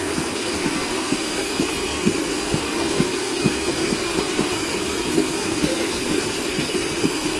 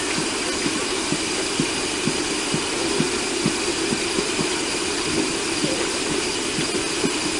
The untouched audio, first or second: second